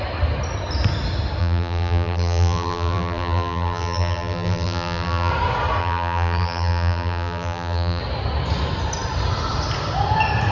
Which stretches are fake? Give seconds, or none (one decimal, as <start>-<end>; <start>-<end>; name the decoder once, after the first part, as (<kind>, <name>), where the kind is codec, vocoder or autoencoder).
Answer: 1.4-5.3 (vocoder, BigVGAN v2); 5.8-8.0